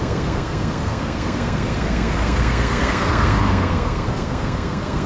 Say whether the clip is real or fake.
fake